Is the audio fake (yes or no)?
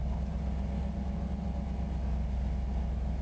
no